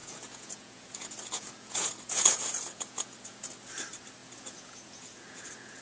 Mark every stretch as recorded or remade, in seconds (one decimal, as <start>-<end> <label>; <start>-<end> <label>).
0.0-3.5 remade; 3.5-4.2 recorded; 4.2-5.8 remade